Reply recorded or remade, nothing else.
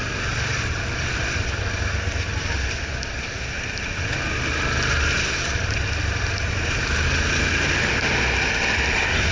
recorded